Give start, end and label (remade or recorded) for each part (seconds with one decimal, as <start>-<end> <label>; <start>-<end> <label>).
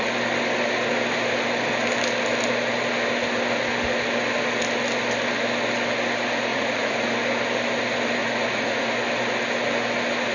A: 0.0-6.5 recorded; 6.5-7.1 remade; 7.1-8.2 recorded; 8.2-8.9 remade; 8.9-10.3 recorded